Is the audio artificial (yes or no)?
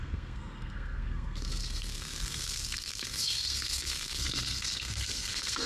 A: yes